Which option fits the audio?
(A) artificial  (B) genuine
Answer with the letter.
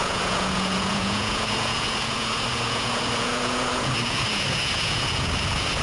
A